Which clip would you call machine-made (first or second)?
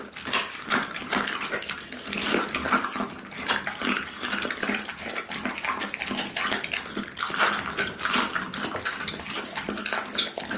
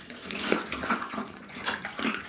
second